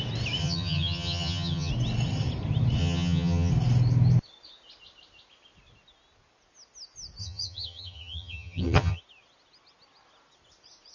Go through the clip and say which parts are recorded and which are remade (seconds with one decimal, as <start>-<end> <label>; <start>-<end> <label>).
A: 0.0-0.4 recorded; 0.4-1.7 remade; 1.7-2.8 recorded; 2.8-3.5 remade; 3.5-7.2 recorded; 7.2-9.0 remade; 9.0-10.9 recorded